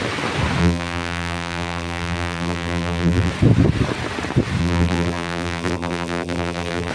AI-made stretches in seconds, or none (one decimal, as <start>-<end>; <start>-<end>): 0.6-3.3; 4.6-6.9